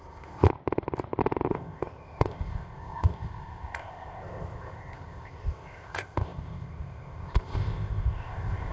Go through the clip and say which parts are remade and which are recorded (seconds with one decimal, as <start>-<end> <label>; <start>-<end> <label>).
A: 0.0-0.5 remade; 0.5-1.5 recorded; 1.5-8.7 remade